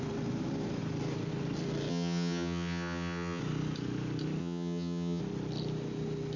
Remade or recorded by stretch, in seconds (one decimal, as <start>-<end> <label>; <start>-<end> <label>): 0.0-1.9 recorded; 1.9-3.4 remade; 3.4-4.4 recorded; 4.4-5.2 remade; 5.2-6.4 recorded